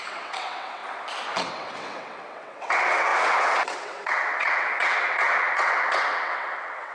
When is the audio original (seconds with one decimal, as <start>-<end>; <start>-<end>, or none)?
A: 0.8-1.5